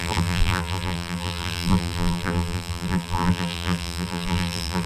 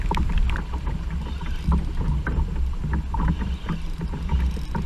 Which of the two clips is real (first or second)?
second